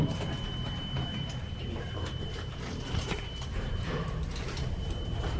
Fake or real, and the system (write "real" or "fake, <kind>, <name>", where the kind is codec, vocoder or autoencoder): fake, vocoder, BigVGAN v2